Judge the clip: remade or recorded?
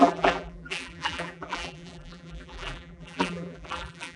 remade